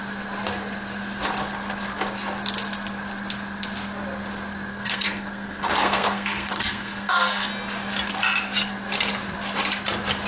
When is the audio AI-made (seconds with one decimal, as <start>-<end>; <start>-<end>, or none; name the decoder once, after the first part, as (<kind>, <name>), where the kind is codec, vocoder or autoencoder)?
4.7-7.5 (codec, SNAC)